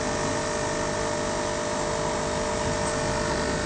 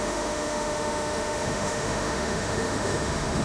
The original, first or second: first